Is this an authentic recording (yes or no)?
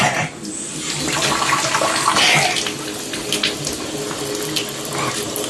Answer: yes